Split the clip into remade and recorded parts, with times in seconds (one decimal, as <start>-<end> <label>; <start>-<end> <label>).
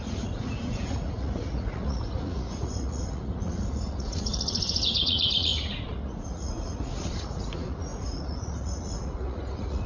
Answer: 0.0-9.9 remade